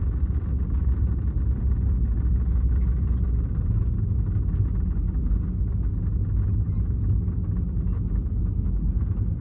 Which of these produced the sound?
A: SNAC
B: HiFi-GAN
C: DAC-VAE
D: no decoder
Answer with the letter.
D